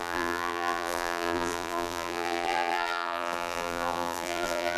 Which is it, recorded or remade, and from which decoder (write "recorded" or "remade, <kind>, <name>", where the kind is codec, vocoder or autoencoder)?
remade, vocoder, BigVGAN v2